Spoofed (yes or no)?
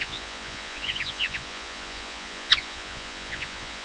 yes